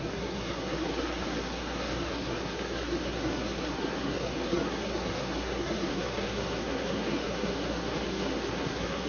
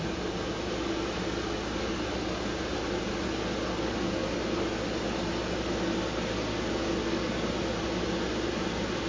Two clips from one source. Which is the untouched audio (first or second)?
second